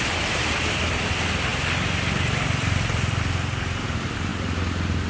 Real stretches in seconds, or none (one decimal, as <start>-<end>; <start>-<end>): 0.0-5.1